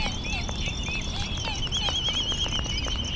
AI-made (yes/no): no